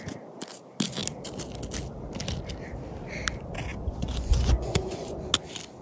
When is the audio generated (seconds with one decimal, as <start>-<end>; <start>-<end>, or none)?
3.7-5.3